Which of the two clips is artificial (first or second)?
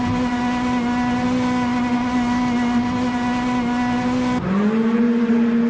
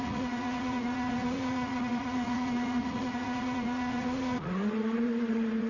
second